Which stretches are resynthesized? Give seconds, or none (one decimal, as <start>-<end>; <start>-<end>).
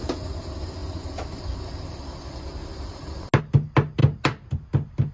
none